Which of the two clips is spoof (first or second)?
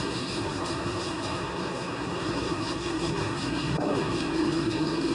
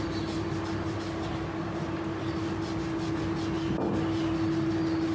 first